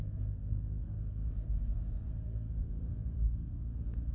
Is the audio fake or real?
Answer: fake